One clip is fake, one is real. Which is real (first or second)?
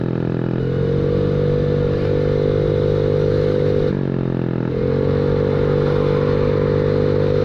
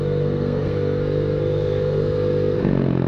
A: first